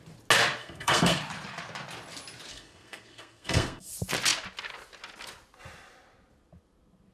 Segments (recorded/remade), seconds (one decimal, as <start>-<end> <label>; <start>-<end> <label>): 0.0-0.6 recorded; 0.6-1.2 remade; 1.2-2.5 recorded; 2.5-3.9 remade; 3.9-7.1 recorded